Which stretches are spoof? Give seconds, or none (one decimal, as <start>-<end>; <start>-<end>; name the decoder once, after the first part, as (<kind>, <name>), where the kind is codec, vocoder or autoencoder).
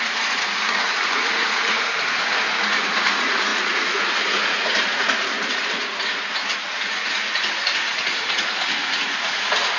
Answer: 0.0-9.8 (vocoder, Vocos)